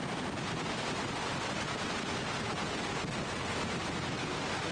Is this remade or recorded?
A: recorded